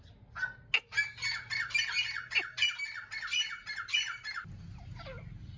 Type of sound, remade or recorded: recorded